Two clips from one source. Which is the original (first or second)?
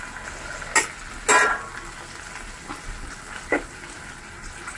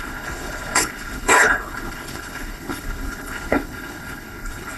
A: first